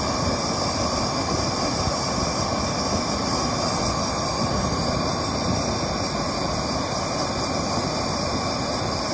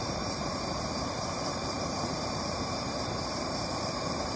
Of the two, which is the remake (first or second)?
second